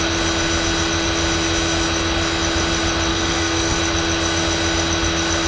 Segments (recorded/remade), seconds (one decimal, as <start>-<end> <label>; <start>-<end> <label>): 0.0-3.1 recorded; 3.1-3.8 remade; 3.8-5.5 recorded